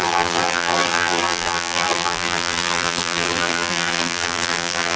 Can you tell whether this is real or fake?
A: fake